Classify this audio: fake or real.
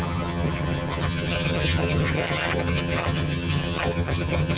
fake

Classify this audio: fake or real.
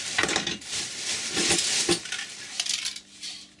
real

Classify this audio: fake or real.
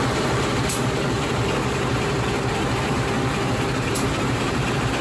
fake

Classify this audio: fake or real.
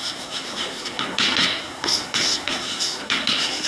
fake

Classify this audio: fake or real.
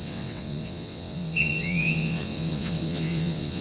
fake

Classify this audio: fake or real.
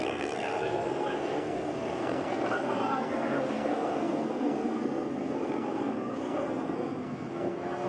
fake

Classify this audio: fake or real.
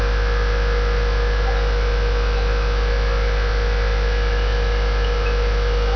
real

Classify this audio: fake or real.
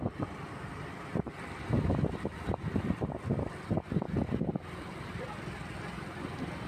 real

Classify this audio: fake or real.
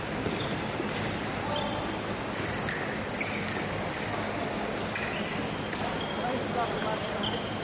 real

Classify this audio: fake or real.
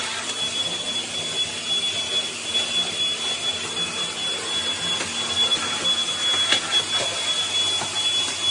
real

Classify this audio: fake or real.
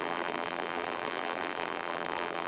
fake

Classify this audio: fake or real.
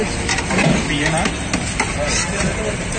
real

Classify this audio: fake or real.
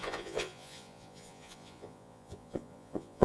fake